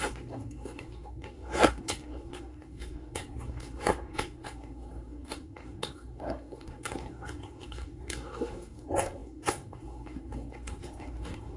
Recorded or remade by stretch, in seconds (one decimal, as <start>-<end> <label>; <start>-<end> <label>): 0.0-11.6 remade